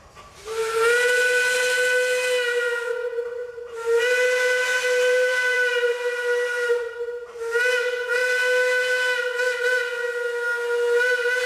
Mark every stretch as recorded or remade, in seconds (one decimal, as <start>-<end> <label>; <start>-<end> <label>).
0.0-3.4 recorded; 3.4-4.0 remade; 4.0-4.7 recorded; 4.7-6.7 remade; 6.7-11.5 recorded